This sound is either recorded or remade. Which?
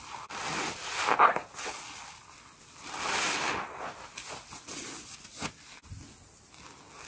recorded